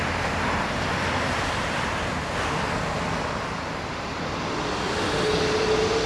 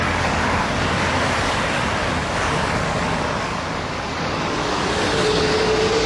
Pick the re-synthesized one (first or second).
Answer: second